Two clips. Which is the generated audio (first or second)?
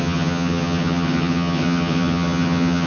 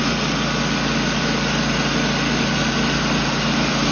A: first